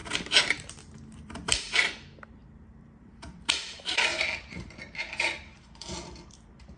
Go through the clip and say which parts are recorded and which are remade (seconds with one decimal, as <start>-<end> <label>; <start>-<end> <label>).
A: 0.0-0.5 recorded; 0.5-6.8 remade